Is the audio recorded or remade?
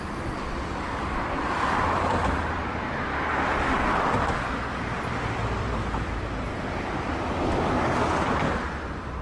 recorded